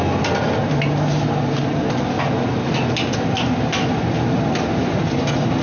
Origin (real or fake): real